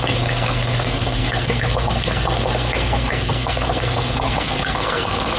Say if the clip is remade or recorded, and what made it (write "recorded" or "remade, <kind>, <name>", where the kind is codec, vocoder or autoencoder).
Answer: remade, codec, SNAC